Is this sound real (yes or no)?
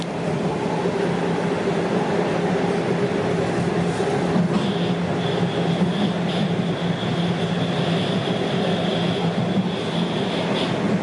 yes